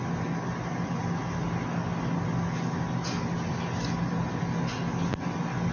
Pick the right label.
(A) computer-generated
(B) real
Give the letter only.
B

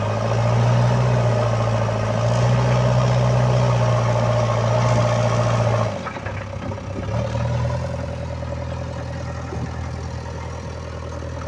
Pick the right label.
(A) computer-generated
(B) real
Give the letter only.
B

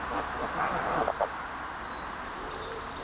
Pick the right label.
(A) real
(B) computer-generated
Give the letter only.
A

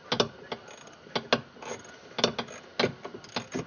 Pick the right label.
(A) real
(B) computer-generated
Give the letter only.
A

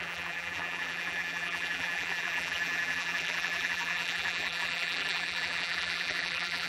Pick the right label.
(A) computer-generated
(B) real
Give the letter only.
A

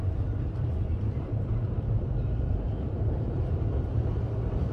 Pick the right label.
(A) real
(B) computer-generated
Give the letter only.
B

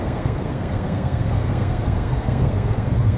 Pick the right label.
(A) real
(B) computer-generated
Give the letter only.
B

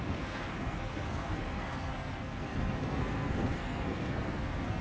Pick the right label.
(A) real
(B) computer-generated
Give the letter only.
B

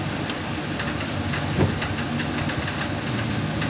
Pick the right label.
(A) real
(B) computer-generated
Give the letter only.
A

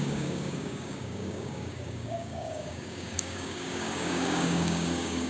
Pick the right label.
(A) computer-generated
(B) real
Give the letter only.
A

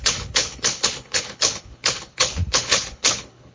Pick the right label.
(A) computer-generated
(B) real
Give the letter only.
A